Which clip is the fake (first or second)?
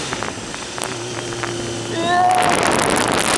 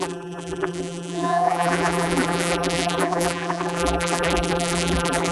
second